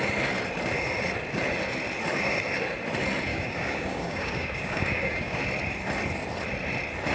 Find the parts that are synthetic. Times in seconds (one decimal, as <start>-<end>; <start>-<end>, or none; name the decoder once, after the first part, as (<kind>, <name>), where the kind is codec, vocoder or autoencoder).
3.3-5.4 (codec, DAC)